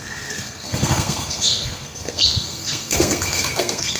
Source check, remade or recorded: remade